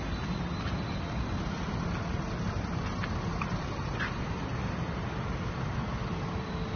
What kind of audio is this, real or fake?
real